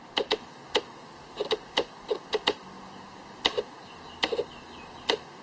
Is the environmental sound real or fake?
real